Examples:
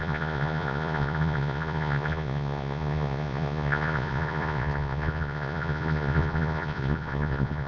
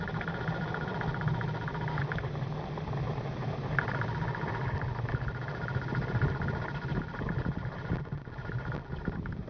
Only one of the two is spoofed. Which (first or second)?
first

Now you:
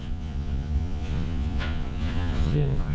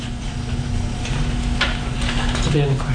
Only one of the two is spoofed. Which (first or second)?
first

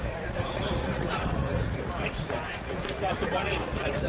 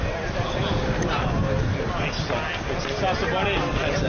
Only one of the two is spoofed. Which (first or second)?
first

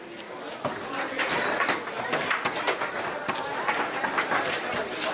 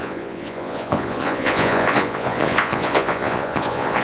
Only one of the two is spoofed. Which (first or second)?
second